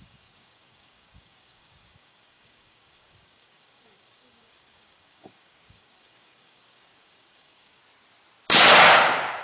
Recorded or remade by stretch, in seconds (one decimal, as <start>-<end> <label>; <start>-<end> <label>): 0.0-7.8 remade; 7.8-9.4 recorded